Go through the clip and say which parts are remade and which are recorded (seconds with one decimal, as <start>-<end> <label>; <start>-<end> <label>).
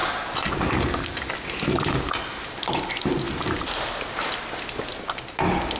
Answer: 0.0-5.8 recorded